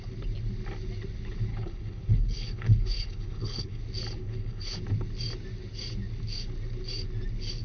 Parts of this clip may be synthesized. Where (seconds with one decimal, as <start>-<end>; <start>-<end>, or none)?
1.5-3.8; 4.2-4.8